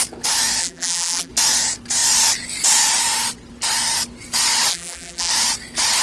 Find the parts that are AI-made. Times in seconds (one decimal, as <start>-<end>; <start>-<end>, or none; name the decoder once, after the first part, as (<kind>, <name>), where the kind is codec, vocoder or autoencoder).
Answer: 0.6-1.3 (vocoder, BigVGAN v2); 4.7-5.3